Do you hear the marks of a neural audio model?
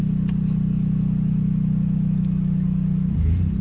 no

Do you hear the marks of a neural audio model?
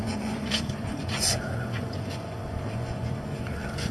yes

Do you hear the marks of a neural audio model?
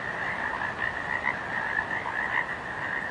no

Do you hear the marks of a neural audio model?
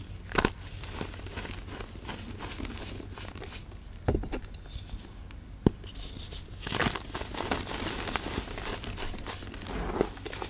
no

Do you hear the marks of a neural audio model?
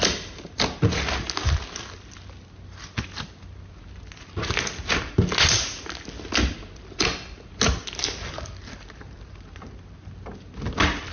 no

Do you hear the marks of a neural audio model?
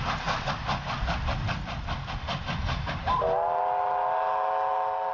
no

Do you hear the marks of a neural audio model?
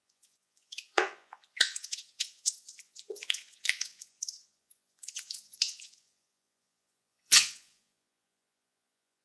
yes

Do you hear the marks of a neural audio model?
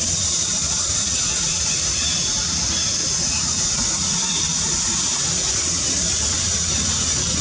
yes